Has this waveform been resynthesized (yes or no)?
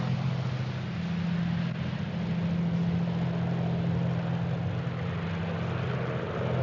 no